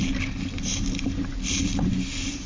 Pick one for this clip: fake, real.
real